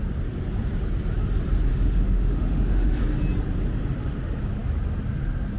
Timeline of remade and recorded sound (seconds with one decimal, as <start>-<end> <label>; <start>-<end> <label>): 0.0-1.7 recorded; 1.7-3.0 remade; 3.0-5.6 recorded